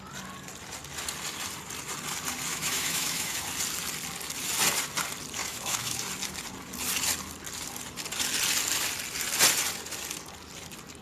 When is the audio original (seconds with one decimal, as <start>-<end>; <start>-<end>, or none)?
0.0-2.5; 3.4-5.4; 6.0-11.0